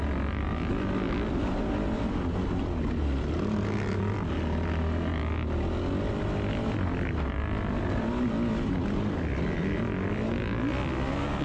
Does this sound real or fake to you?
real